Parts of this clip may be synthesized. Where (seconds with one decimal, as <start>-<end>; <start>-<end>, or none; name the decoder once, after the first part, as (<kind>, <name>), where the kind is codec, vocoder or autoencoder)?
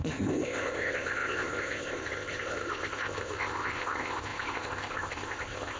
0.0-5.8 (codec, ZipCodec)